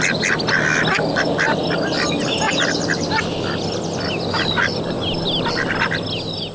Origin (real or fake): real